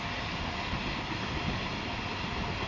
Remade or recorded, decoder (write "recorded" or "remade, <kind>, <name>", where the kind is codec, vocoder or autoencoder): recorded